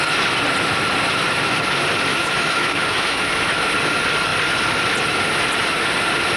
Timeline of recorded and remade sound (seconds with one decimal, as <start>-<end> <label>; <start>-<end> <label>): 0.0-2.1 recorded; 2.1-3.7 remade; 3.7-6.4 recorded